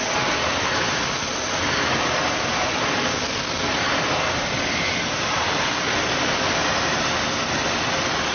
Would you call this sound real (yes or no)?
yes